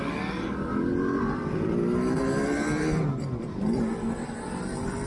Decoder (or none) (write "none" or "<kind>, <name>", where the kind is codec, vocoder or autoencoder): none